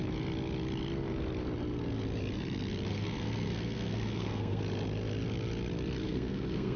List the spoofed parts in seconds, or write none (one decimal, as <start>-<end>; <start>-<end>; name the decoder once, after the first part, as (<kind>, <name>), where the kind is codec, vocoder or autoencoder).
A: 2.9-4.6 (codec, SNAC); 6.0-6.8